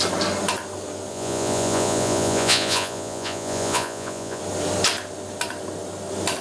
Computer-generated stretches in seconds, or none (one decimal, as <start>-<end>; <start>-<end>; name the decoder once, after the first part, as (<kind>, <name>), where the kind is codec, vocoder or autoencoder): 1.1-4.4 (vocoder, Vocos)